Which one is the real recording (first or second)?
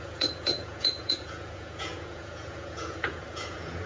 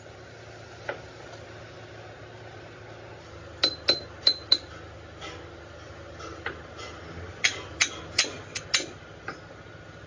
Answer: second